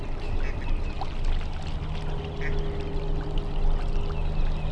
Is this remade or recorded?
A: recorded